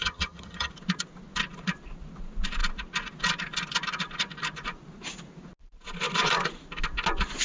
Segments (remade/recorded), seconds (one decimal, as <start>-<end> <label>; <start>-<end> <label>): 0.0-0.7 remade; 0.7-7.4 recorded

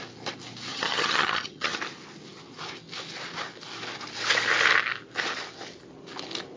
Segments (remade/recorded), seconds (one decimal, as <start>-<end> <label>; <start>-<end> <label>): 0.0-0.7 recorded; 0.7-1.8 remade; 1.8-6.6 recorded